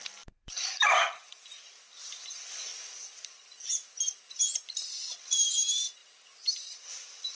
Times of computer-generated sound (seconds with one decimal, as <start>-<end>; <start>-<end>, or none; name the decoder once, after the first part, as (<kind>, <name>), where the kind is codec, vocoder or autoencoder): 0.0-2.7 (vocoder, BigVGAN v2); 5.2-6.0; 6.5-7.3